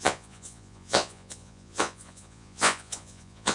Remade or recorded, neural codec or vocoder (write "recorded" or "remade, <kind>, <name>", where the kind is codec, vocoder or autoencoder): remade, vocoder, Vocos